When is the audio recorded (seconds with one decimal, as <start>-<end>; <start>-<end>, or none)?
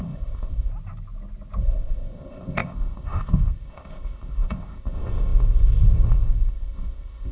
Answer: 0.7-1.6